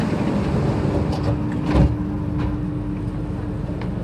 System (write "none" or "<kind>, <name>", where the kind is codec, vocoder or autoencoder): none